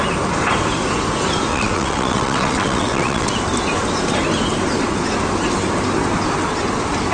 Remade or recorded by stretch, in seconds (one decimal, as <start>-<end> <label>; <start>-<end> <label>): 0.0-1.5 recorded; 1.5-3.3 remade; 3.3-7.1 recorded